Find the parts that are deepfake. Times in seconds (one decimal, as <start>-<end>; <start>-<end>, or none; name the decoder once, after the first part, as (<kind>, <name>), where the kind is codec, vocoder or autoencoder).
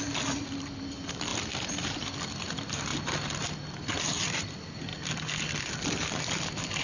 0.0-1.3 (vocoder, BigVGAN v2); 2.0-2.9; 4.0-6.8